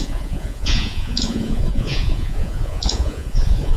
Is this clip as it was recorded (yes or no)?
no